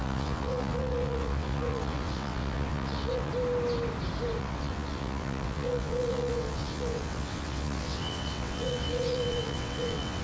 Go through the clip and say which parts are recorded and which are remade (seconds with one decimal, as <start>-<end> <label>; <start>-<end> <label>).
0.0-3.3 remade; 3.3-4.4 recorded; 4.4-10.2 remade